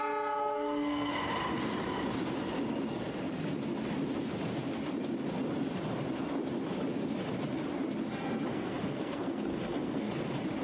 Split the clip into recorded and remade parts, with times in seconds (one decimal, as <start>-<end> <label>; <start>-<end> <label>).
0.0-0.4 recorded; 0.4-1.1 remade; 1.1-8.5 recorded; 8.5-10.1 remade; 10.1-10.6 recorded